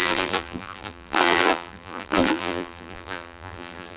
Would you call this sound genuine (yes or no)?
no